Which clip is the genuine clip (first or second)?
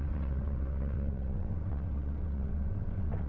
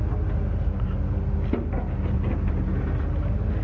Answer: second